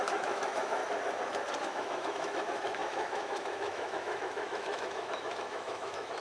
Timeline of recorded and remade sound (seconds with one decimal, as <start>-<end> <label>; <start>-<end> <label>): 0.0-0.8 remade; 0.8-1.6 recorded; 1.6-6.2 remade